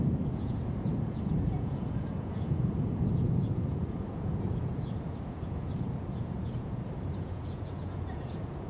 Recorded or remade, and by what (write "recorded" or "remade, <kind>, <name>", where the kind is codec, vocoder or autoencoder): remade, vocoder, Vocos